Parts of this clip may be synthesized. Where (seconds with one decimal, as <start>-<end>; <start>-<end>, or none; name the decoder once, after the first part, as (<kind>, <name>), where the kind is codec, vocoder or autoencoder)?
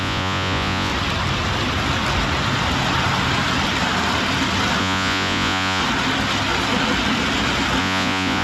0.0-0.9 (vocoder, Vocos); 4.8-5.8; 7.8-8.4